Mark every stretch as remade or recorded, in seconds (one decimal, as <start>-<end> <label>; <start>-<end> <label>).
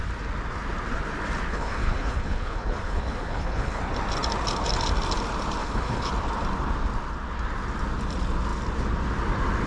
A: 0.0-1.5 recorded; 1.5-3.8 remade; 3.8-5.6 recorded; 5.6-6.1 remade; 6.1-9.7 recorded